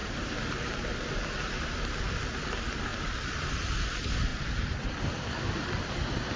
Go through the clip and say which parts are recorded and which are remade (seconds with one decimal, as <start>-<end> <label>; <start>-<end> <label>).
0.0-1.2 remade; 1.2-2.9 recorded; 2.9-3.5 remade; 3.5-4.3 recorded; 4.3-4.9 remade; 4.9-6.4 recorded